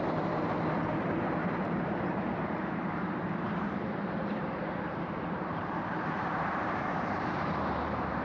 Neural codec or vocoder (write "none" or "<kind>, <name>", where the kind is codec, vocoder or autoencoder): vocoder, BigVGAN v2